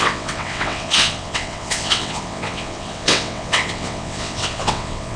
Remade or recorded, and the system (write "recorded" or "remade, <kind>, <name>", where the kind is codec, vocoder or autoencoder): remade, vocoder, WaveNeXt